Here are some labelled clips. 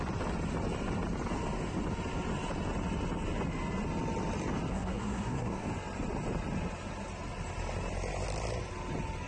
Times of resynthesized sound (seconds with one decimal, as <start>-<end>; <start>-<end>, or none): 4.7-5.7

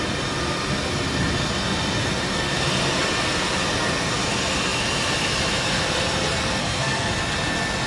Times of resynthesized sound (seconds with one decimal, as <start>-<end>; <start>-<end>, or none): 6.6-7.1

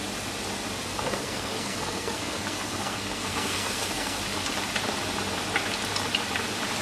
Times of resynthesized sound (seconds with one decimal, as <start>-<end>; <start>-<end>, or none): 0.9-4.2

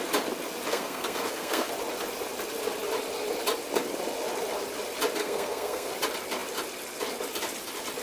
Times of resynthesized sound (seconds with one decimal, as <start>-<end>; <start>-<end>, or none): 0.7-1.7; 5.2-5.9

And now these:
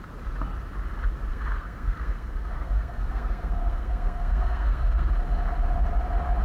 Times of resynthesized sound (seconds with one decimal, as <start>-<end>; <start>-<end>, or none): 1.3-5.1

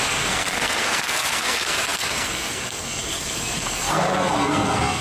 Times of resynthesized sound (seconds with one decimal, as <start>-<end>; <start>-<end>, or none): 0.0-5.0

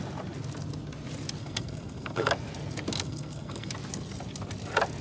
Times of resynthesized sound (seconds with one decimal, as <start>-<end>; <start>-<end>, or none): 1.4-2.3; 2.9-3.7